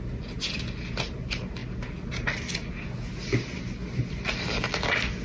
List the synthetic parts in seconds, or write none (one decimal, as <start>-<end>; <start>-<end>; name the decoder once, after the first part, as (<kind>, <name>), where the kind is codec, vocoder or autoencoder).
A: none